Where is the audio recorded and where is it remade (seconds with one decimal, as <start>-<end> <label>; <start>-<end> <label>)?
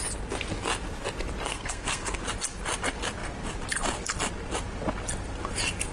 0.0-1.5 recorded; 1.5-2.2 remade; 2.2-5.9 recorded